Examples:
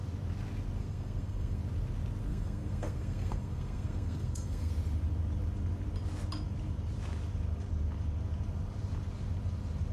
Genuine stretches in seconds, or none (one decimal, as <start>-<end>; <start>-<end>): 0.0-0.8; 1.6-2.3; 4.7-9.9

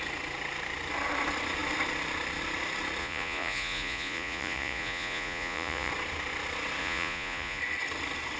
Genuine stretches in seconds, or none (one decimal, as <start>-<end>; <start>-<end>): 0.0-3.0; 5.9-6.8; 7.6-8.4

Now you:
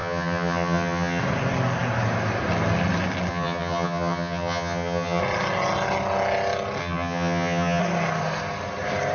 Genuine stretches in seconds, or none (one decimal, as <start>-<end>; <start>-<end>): 1.2-3.3; 5.2-6.8; 7.8-9.1